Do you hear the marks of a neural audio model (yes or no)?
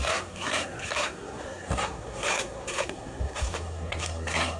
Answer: yes